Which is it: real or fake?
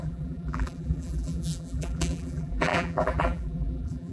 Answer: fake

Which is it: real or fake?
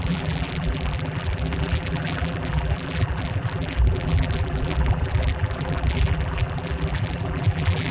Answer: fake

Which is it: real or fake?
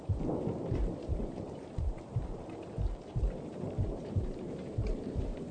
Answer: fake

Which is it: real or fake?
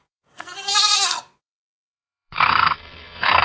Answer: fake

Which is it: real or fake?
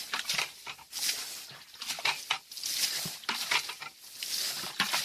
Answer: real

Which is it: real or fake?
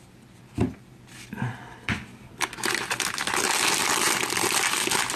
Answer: real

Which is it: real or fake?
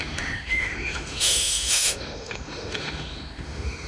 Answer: fake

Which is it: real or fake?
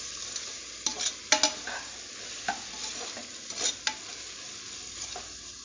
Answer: real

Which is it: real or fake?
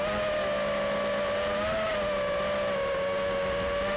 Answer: real